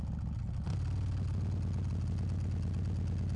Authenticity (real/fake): real